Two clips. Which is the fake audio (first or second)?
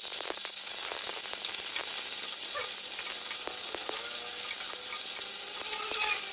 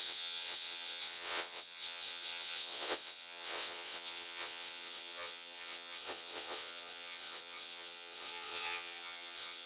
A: second